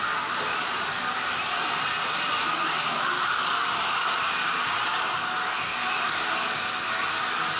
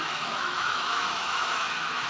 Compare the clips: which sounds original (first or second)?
first